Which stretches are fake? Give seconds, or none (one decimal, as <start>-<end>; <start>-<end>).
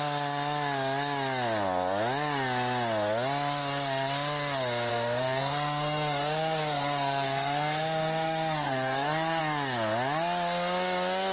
4.9-9.4